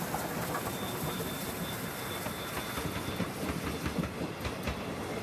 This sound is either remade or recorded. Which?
recorded